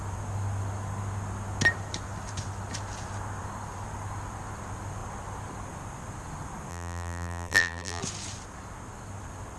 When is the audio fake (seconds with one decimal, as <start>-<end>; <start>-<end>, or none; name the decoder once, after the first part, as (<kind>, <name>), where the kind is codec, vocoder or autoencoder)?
6.7-8.0 (vocoder, BigVGAN v2)